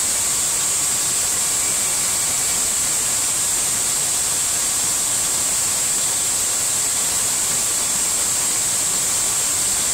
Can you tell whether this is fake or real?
real